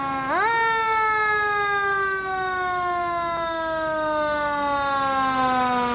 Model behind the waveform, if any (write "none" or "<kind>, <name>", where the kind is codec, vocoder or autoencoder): none